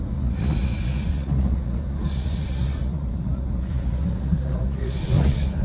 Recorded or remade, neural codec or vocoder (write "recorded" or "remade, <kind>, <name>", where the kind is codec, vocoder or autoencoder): remade, vocoder, Vocos